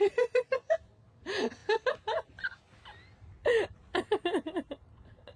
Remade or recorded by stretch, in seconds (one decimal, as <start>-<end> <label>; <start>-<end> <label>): 0.0-5.4 recorded